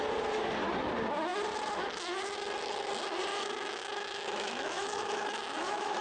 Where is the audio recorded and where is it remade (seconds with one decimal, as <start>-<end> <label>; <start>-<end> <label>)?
0.0-3.3 recorded; 3.3-6.0 remade